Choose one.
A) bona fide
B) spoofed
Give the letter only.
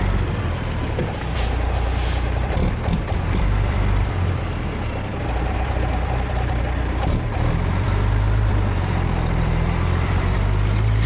B